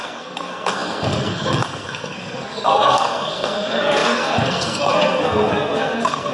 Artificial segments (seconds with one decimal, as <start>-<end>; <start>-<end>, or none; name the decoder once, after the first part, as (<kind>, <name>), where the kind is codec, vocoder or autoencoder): 0.0-6.3 (codec, SNAC)